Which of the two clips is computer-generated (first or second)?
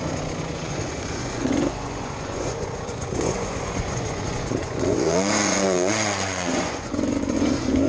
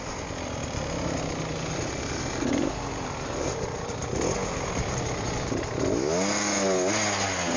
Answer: first